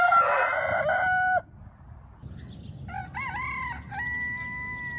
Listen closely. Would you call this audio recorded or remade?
recorded